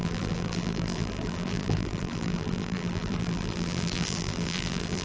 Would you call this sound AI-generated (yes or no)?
yes